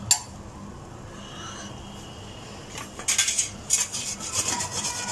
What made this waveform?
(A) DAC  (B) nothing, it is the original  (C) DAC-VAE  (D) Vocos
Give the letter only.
B